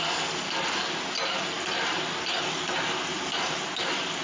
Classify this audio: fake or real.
real